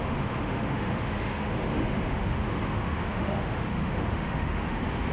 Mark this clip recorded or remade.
remade